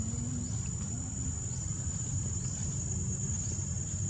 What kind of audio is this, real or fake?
fake